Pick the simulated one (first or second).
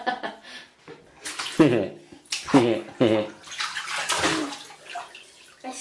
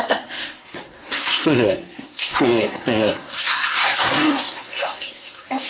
second